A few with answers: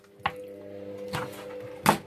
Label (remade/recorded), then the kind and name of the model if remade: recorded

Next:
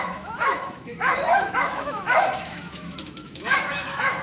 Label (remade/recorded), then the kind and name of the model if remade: remade, autoencoder, DAC-VAE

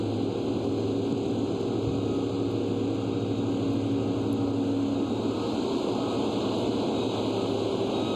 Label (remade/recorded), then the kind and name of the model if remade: recorded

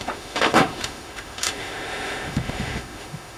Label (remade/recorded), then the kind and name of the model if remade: remade, autoencoder, DAC-VAE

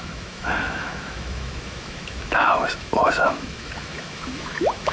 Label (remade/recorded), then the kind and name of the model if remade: remade, autoencoder, DAC-VAE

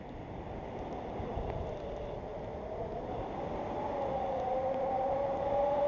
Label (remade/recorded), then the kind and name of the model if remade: recorded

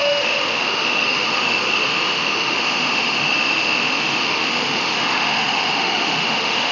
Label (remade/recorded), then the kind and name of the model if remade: remade, autoencoder, DAC-VAE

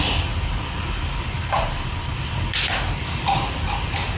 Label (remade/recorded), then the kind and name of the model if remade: recorded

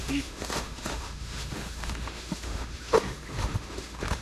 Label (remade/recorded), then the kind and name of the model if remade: remade, autoencoder, DAC-VAE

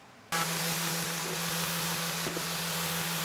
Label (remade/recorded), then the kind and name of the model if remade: recorded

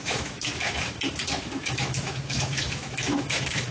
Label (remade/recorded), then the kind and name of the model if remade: remade, autoencoder, DAC-VAE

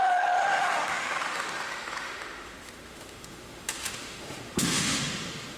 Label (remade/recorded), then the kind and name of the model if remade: remade, autoencoder, DAC-VAE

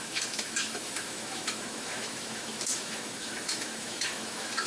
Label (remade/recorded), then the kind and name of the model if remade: remade, autoencoder, DAC-VAE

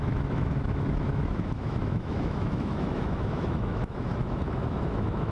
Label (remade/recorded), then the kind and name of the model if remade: remade, autoencoder, DAC-VAE